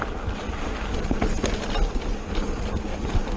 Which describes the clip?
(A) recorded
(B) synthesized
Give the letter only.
A